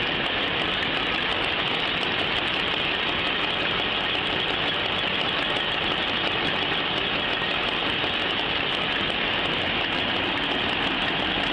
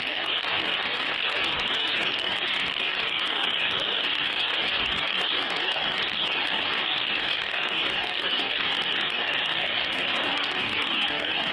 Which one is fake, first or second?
second